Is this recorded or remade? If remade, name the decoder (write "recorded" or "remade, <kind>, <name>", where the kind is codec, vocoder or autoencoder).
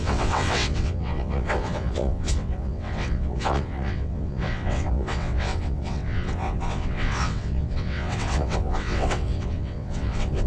remade, vocoder, WaveNeXt